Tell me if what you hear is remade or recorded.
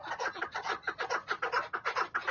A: recorded